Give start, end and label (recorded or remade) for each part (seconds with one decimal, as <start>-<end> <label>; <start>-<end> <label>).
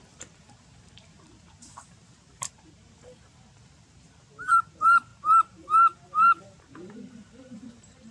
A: 0.0-8.1 remade